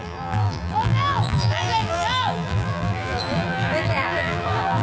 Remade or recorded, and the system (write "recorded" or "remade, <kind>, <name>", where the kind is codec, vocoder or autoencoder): remade, vocoder, BigVGAN v2